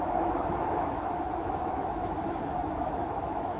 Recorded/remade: remade